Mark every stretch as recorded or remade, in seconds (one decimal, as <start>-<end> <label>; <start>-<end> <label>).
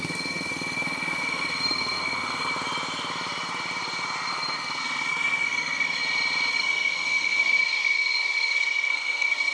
0.0-2.5 remade; 2.5-4.3 recorded; 4.3-6.0 remade; 6.0-6.5 recorded; 6.5-9.5 remade